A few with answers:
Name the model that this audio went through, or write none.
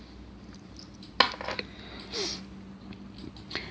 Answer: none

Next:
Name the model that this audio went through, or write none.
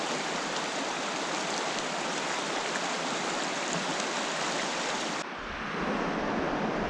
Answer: none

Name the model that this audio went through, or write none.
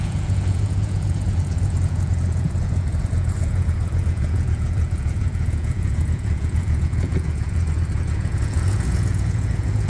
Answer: vocoder, Vocos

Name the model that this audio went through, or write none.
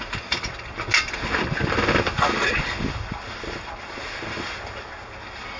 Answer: none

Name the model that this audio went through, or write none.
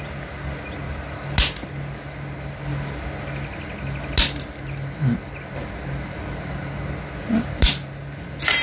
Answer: none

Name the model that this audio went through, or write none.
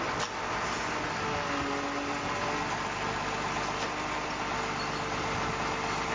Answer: none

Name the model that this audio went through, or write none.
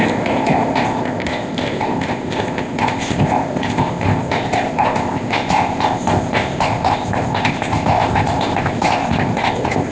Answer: codec, ZipCodec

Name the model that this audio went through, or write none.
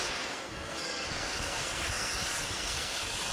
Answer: codec, SNAC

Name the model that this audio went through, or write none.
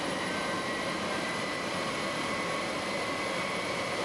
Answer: vocoder, BigVGAN v2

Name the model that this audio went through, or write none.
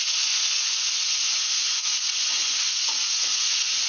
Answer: vocoder, Vocos